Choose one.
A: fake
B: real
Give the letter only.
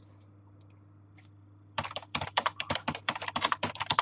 A